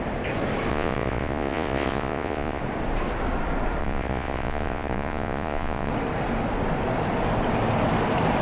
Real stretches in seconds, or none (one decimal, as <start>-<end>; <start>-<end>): 0.0-0.7; 2.6-3.8; 5.9-8.4